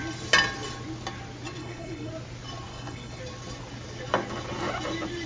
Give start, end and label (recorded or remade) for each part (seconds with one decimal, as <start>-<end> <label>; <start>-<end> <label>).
0.0-1.6 recorded; 1.6-2.1 remade; 2.1-2.7 recorded; 2.7-3.2 remade; 3.2-5.3 recorded